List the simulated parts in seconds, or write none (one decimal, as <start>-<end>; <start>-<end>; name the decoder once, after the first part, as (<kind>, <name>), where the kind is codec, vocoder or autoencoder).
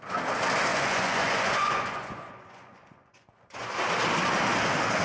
0.7-3.7 (vocoder, Vocos)